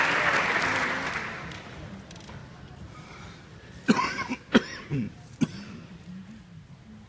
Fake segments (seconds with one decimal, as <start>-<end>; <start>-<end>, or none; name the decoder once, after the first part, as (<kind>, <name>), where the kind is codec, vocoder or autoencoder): none